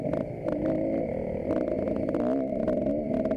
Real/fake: real